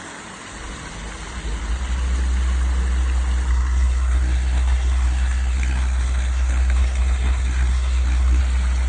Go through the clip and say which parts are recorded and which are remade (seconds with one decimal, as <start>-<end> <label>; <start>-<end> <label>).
0.0-3.5 recorded; 3.5-8.4 remade; 8.4-8.9 recorded